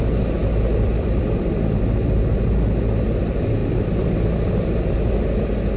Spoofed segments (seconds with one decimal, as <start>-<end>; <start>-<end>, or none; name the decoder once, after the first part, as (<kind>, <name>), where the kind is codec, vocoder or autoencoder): 0.4-2.3 (vocoder, BigVGAN v2); 3.6-5.1